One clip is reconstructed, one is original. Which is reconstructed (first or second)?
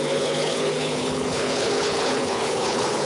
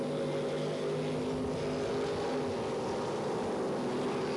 first